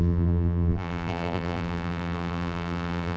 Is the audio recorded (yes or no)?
no